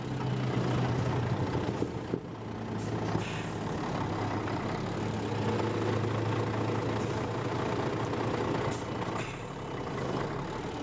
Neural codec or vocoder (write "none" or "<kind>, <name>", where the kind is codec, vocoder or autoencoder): none